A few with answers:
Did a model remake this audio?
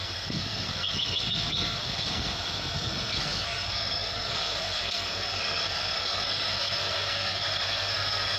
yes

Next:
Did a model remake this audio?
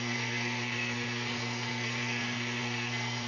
yes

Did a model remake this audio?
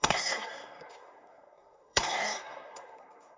yes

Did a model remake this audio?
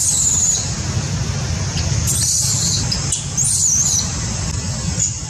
no